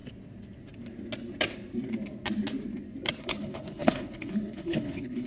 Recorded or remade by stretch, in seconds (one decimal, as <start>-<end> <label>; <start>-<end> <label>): 0.0-3.2 recorded; 3.2-5.3 remade